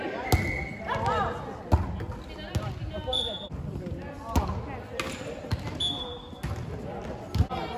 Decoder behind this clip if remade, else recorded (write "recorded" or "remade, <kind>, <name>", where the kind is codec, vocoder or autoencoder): recorded